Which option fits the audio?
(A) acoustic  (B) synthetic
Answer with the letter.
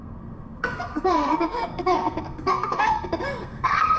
B